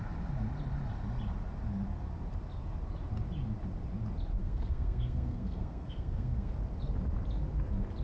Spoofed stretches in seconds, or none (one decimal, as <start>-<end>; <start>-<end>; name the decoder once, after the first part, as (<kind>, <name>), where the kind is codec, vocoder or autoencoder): 4.4-6.5 (codec, SNAC)